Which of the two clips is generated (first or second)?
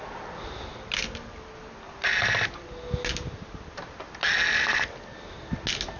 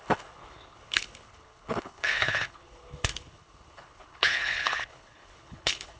second